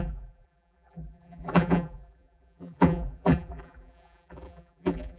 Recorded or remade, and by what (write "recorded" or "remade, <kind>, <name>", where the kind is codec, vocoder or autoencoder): remade, vocoder, BigVGAN v2